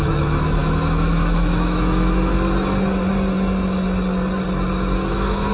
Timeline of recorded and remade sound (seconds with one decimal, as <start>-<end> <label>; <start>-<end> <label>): 0.0-2.3 remade; 2.3-5.1 recorded; 5.1-5.5 remade